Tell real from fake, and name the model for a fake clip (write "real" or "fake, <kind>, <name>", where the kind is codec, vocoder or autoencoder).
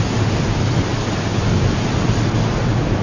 real